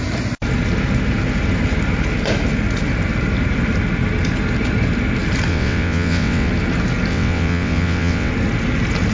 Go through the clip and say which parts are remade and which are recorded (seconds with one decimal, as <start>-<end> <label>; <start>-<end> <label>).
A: 0.0-5.5 recorded; 5.5-6.5 remade; 6.5-7.1 recorded; 7.1-8.3 remade; 8.3-9.1 recorded